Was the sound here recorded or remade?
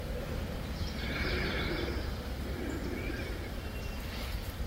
recorded